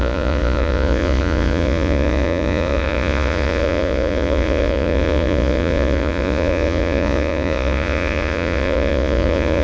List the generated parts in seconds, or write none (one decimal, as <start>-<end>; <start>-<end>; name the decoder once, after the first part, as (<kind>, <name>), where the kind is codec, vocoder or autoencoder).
0.0-9.6 (vocoder, Vocos)